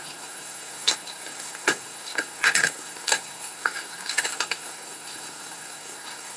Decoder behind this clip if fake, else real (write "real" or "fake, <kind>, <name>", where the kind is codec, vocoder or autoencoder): fake, codec, SNAC